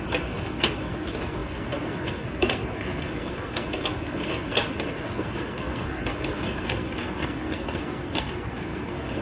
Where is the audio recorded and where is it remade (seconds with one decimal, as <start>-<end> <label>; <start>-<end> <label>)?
0.0-9.2 remade